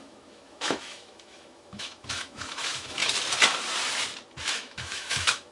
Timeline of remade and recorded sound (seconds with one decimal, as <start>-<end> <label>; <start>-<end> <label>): 0.0-3.0 remade; 3.0-4.4 recorded; 4.4-5.5 remade

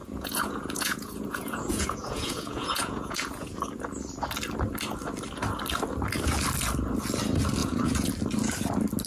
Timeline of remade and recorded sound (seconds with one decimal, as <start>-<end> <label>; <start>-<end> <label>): 0.0-3.6 remade; 3.6-7.6 recorded; 7.6-8.1 remade; 8.1-9.1 recorded